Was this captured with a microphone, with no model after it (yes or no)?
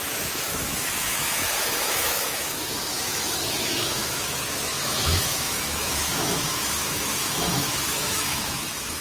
no